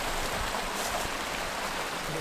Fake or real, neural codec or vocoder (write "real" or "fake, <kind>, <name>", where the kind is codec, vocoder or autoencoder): real